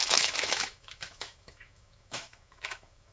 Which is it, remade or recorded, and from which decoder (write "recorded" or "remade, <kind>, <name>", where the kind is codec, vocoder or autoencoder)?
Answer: remade, autoencoder, DAC-VAE